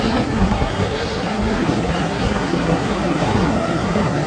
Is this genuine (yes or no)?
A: no